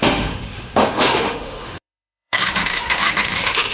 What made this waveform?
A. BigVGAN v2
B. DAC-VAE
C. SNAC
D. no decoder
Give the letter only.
B